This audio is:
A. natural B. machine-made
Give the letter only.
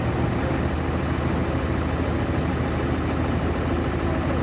A